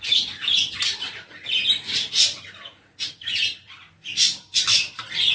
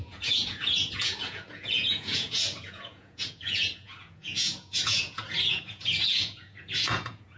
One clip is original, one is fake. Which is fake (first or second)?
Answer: second